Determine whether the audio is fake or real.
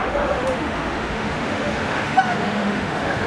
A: fake